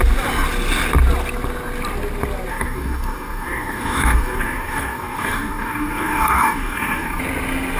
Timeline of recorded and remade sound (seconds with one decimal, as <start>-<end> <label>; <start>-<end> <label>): 0.0-2.5 recorded; 2.5-7.2 remade; 7.2-7.8 recorded